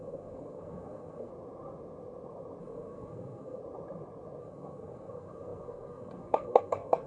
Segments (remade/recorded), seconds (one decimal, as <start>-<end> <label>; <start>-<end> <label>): 0.0-1.3 remade; 1.3-2.6 recorded; 2.6-3.6 remade; 3.6-4.4 recorded; 4.4-7.1 remade